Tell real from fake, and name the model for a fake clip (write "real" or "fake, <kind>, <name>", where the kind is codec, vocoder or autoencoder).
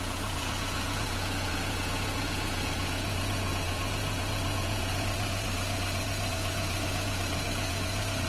fake, vocoder, Vocos